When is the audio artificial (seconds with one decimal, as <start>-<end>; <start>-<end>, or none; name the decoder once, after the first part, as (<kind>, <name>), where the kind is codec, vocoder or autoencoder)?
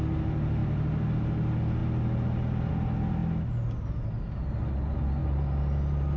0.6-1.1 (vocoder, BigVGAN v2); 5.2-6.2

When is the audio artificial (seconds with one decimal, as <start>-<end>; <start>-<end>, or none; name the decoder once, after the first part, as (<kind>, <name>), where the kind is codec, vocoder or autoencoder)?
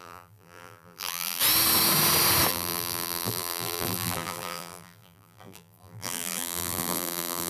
0.0-1.4 (vocoder, BigVGAN v2); 2.5-7.5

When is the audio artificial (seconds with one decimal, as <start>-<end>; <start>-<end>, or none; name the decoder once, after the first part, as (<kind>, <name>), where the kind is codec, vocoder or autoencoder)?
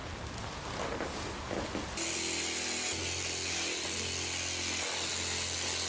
none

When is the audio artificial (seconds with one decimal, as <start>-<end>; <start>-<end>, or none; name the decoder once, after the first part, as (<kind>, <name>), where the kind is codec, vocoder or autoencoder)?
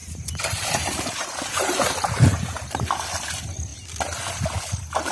0.0-2.8 (vocoder, BigVGAN v2)